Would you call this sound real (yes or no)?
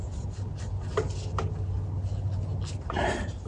yes